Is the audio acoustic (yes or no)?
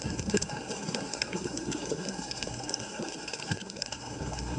no